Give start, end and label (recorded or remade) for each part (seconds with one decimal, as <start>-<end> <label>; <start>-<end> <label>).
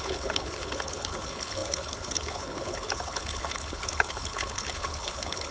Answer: 0.0-5.5 remade